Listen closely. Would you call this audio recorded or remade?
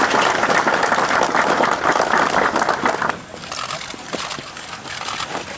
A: recorded